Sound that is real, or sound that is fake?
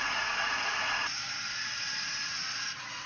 fake